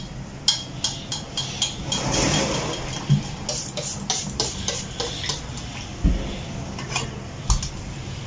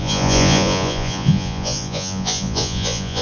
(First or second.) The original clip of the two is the first